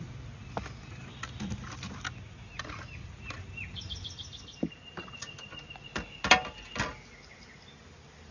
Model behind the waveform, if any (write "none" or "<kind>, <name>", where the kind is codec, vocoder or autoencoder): none